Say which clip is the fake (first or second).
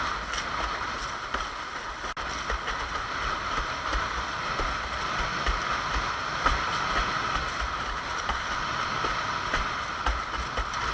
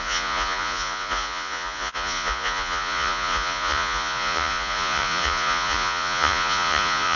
second